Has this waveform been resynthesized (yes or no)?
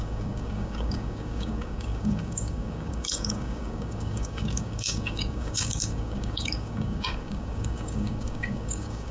yes